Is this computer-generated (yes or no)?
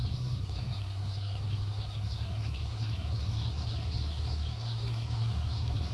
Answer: yes